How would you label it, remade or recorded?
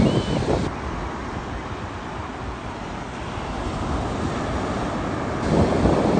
recorded